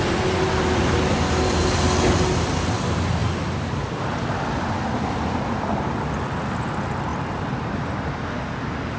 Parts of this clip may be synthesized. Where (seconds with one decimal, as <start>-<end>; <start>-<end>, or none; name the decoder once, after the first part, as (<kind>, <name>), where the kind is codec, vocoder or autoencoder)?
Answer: none